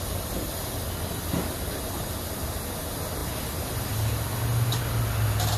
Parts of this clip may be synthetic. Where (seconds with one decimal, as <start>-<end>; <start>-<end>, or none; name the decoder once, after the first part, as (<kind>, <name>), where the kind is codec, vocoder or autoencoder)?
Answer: none